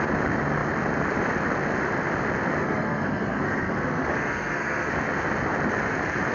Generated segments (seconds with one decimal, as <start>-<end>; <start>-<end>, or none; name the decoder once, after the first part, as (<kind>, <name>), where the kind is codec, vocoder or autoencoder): 2.6-4.9 (codec, SNAC)